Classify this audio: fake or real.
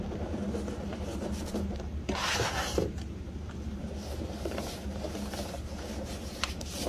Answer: fake